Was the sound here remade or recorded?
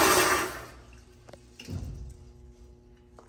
recorded